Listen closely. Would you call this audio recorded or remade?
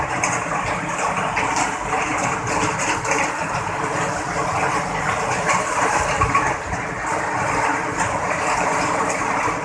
recorded